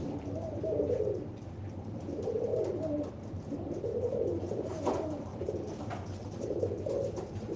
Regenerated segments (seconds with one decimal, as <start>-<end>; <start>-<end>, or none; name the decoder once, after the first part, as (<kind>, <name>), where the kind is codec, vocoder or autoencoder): 5.3-5.9 (vocoder, BigVGAN v2)